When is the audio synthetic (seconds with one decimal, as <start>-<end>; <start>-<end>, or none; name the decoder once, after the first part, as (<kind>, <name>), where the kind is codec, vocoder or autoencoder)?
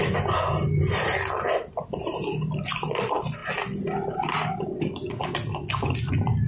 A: none